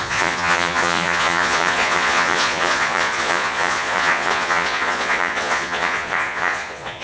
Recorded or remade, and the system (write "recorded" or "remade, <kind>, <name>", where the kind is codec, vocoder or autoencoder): remade, vocoder, Vocos